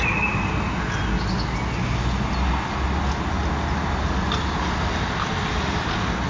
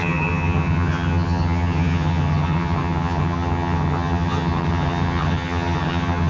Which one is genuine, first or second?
first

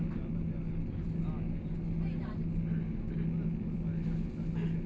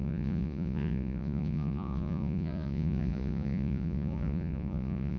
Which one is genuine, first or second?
first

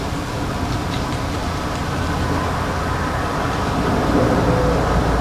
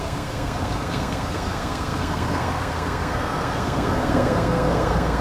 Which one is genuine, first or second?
first